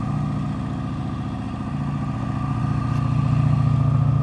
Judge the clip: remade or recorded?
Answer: recorded